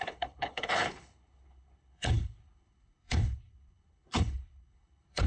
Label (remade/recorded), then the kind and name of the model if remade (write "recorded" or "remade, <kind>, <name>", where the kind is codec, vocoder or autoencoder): remade, codec, HILCodec